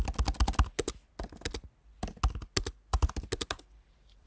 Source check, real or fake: real